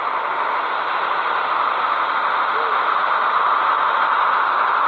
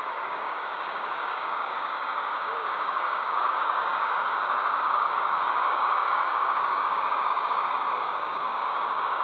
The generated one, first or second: second